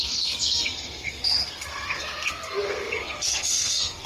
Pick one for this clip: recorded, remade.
remade